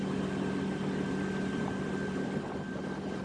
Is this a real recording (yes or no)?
yes